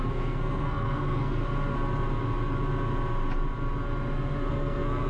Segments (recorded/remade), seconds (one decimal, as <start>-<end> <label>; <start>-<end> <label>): 0.0-1.4 remade; 1.4-4.5 recorded; 4.5-5.1 remade

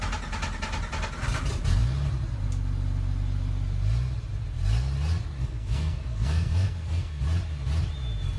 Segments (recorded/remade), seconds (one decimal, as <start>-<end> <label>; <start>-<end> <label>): 0.0-5.4 recorded; 5.4-7.2 remade; 7.2-8.4 recorded